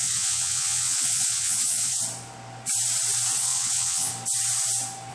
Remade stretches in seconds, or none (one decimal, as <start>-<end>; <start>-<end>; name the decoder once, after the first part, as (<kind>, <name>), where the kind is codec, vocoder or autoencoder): 0.0-2.0 (vocoder, WaveNeXt); 3.4-4.1

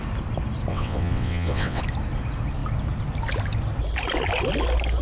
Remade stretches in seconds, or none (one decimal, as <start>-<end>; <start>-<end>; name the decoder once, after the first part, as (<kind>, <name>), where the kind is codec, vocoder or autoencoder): 0.7-1.8 (vocoder, WaveNeXt)

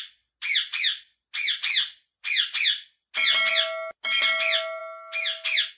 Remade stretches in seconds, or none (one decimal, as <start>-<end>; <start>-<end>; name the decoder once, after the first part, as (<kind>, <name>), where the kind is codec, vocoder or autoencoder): none

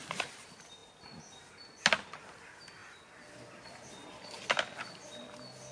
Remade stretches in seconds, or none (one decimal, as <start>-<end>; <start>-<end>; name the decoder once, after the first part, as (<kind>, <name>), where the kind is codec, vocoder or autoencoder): none

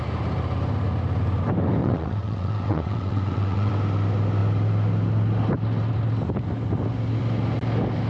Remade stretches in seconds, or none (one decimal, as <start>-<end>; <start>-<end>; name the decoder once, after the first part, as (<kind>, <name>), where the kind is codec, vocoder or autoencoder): 1.8-3.7 (vocoder, WaveNeXt)